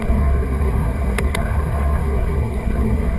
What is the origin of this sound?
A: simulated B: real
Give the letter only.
A